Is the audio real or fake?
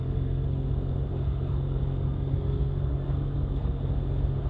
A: fake